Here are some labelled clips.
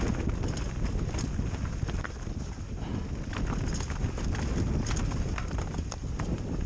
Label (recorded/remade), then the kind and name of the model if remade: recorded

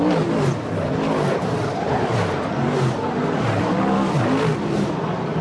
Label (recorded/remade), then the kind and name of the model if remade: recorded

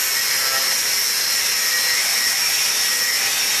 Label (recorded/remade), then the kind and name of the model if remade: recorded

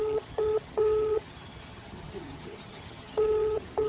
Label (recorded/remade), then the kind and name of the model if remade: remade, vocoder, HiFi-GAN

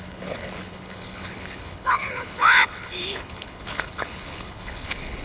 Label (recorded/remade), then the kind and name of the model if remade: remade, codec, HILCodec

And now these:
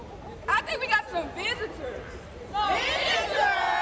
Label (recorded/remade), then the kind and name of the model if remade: recorded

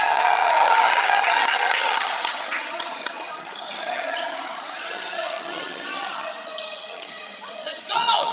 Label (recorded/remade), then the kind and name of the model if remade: remade, vocoder, HiFi-GAN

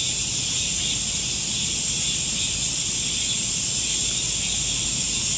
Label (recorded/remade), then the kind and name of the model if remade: recorded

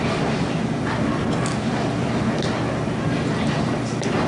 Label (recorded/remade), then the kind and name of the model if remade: recorded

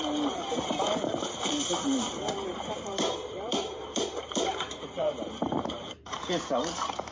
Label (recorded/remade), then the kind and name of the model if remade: remade, vocoder, BigVGAN v2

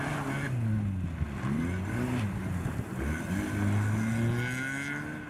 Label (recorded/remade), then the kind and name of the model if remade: recorded